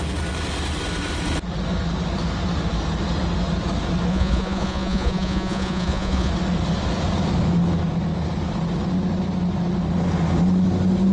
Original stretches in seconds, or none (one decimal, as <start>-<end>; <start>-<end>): 0.0-4.1; 6.3-11.1